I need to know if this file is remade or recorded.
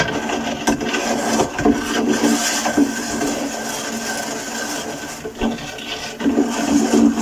recorded